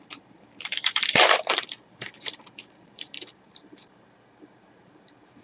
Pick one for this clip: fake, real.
fake